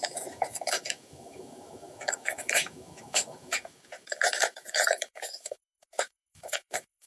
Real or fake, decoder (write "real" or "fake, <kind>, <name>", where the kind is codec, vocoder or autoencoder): fake, autoencoder, DAC-VAE